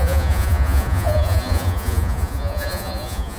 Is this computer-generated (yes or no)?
yes